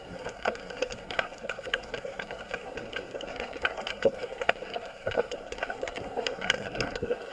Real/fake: fake